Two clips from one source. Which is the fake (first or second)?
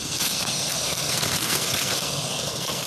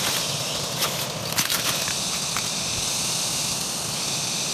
first